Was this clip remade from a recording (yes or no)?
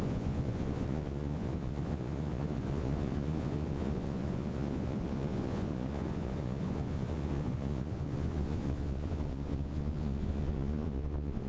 yes